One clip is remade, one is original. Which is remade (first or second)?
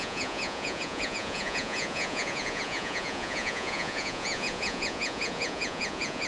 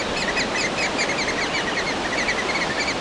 first